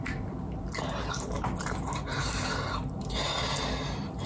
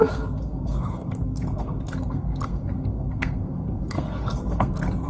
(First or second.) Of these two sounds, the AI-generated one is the second